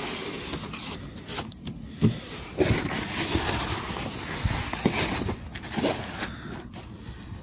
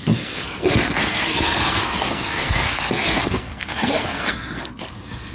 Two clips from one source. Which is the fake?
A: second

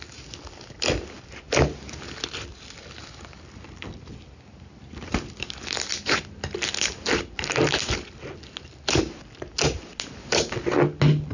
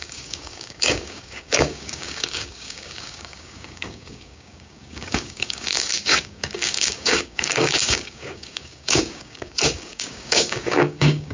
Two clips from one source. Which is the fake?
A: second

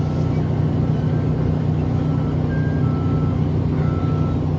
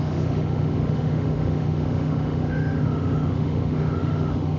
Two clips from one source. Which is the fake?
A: second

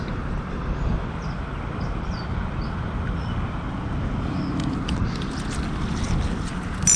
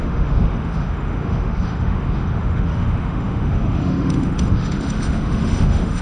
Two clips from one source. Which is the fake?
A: second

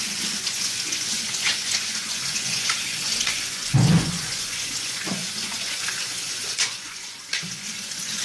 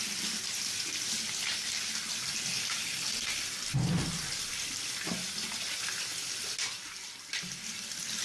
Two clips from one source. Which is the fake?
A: first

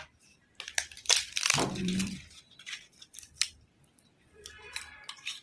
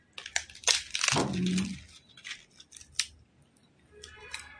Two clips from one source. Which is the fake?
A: first